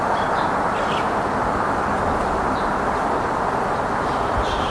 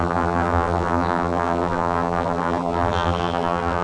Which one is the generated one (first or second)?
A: second